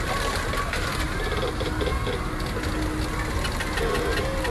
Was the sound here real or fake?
real